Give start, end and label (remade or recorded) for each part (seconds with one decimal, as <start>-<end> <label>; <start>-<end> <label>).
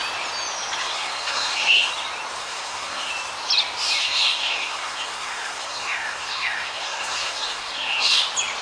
0.0-0.8 recorded; 0.8-1.9 remade; 1.9-2.4 recorded; 2.4-3.1 remade; 3.1-4.0 recorded; 4.0-8.2 remade; 8.2-8.6 recorded